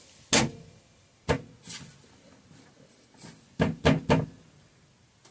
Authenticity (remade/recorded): recorded